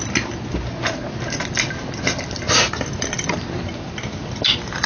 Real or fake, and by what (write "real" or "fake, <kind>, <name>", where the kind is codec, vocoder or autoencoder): real